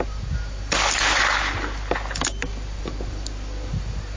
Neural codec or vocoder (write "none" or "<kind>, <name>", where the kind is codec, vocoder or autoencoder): none